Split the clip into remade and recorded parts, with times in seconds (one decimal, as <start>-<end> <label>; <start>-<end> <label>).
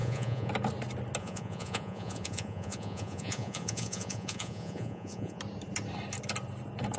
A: 0.0-0.5 remade; 0.5-1.2 recorded; 1.2-5.4 remade; 5.4-7.0 recorded